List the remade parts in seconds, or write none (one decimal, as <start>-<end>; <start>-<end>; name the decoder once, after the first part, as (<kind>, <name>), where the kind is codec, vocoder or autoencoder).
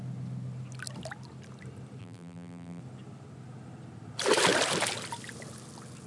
2.0-2.8 (vocoder, BigVGAN v2)